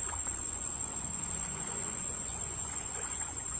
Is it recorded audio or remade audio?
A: remade